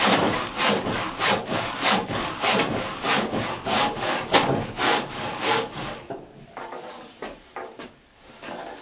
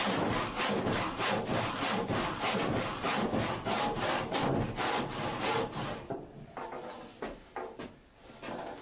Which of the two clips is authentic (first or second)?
second